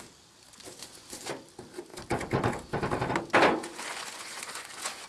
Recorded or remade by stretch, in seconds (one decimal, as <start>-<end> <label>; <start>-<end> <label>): 0.0-0.8 recorded; 0.8-1.3 remade; 1.3-3.6 recorded; 3.6-5.1 remade